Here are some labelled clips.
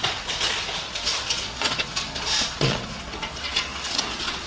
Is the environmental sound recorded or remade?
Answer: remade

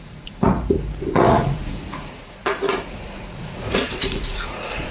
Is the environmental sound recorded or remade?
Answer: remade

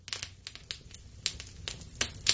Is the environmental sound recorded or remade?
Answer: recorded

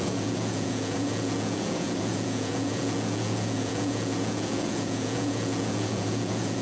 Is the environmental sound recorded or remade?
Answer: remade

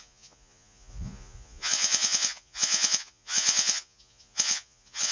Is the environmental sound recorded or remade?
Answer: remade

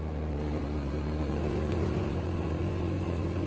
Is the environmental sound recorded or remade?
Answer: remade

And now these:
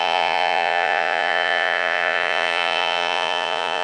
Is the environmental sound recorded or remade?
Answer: remade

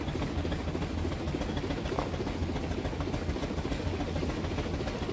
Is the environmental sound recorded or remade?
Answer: recorded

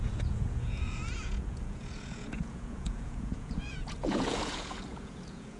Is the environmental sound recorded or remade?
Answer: remade